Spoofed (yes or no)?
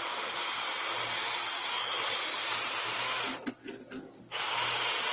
no